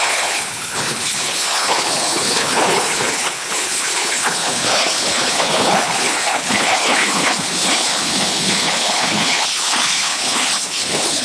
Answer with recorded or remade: remade